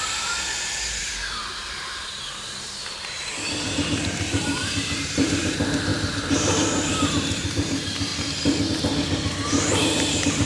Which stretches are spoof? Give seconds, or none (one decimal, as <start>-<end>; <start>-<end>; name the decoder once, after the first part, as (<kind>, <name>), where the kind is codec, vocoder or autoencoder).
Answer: 0.0-8.1 (vocoder, BigVGAN v2); 8.7-10.5